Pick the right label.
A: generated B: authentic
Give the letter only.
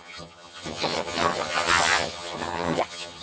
A